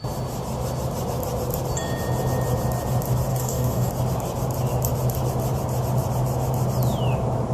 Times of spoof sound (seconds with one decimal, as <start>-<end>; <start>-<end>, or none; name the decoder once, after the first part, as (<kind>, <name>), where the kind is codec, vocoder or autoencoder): 3.3-3.9 (codec, DAC)